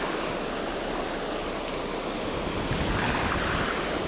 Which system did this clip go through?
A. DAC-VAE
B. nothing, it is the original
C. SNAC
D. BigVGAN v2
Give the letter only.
B